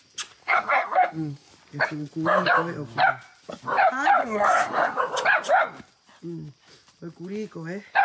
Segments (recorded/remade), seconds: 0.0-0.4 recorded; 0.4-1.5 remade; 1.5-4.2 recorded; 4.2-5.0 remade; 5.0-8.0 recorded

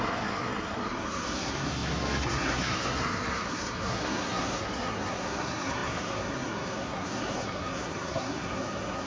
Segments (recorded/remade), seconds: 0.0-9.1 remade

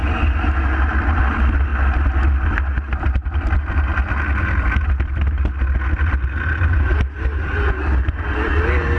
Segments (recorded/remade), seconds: 0.0-9.0 recorded

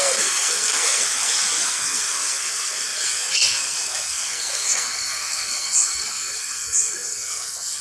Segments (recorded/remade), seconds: 0.0-7.8 remade